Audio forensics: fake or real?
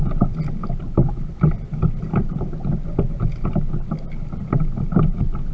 real